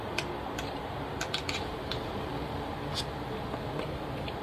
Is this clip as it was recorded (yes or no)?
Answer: yes